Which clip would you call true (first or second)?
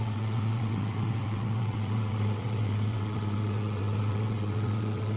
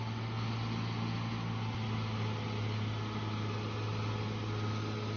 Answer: second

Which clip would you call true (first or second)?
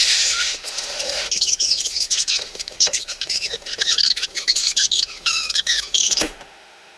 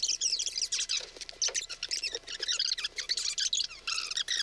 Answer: second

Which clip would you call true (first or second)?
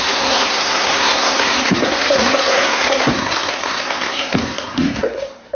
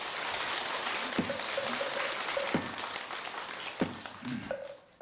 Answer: second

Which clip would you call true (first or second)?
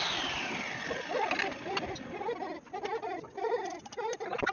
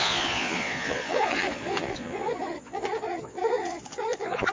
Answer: first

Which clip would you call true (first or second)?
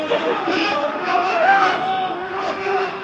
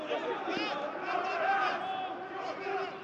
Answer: second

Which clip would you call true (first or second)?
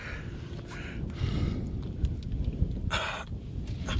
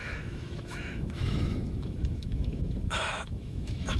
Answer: first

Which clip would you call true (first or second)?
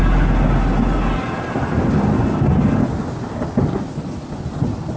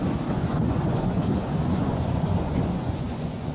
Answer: first